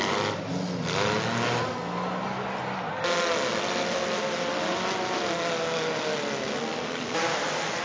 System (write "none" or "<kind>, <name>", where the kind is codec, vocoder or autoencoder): none